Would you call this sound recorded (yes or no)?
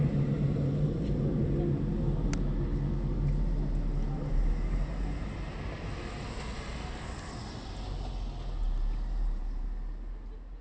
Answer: yes